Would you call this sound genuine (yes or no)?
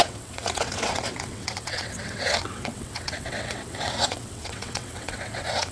no